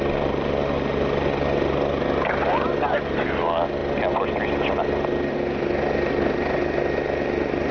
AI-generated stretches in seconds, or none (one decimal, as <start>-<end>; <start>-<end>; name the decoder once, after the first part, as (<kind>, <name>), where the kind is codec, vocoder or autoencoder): none